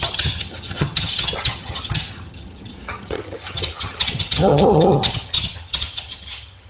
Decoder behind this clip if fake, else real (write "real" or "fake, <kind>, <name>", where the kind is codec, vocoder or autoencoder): fake, vocoder, HiFi-GAN